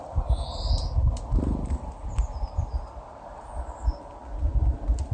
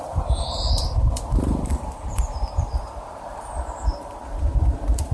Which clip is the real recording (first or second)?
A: first